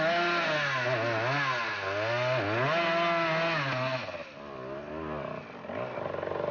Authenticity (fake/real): real